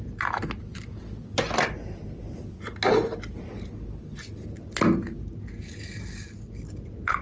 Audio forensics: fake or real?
real